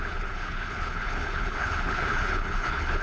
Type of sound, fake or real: fake